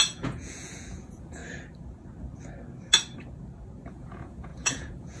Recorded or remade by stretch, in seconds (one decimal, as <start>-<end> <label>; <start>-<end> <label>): 0.0-1.4 remade; 1.4-3.9 recorded; 3.9-5.2 remade